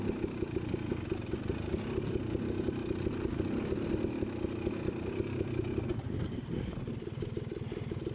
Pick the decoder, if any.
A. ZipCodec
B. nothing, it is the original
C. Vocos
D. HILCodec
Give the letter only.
B